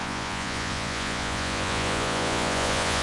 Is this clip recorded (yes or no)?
no